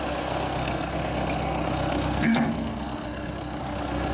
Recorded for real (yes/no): no